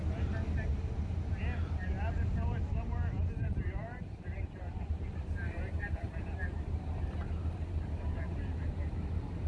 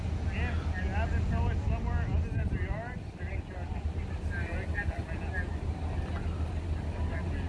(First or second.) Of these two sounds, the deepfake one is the first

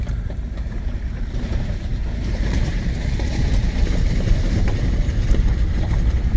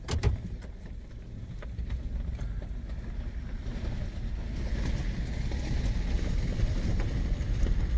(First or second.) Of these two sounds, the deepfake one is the first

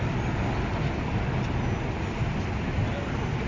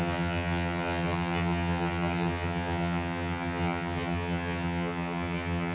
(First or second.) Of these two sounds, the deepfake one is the second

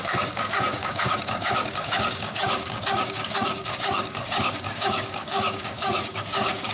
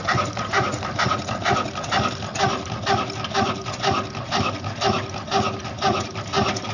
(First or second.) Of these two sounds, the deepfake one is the first